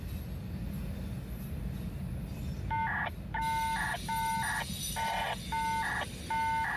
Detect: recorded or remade recorded